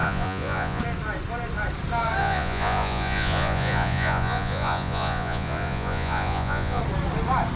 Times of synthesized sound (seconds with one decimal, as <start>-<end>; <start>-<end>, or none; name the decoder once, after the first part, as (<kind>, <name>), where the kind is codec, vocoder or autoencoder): 0.0-0.8 (vocoder, Vocos); 2.2-6.8